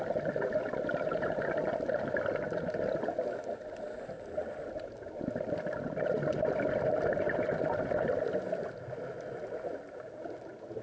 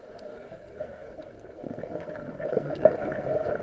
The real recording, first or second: first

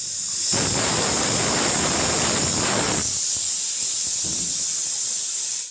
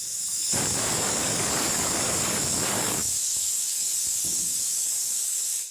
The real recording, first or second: first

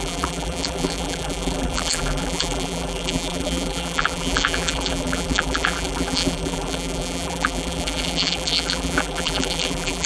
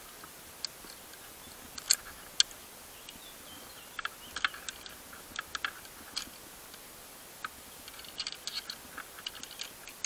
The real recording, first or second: second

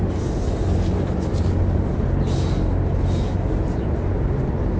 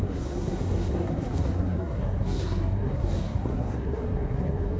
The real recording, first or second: first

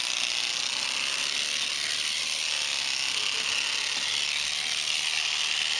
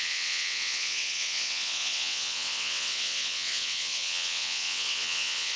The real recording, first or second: first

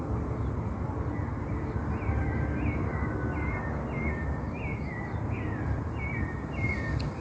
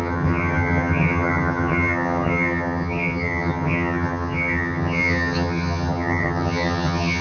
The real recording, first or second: first